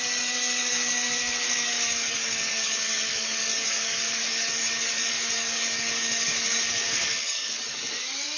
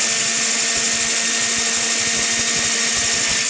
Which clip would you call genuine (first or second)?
second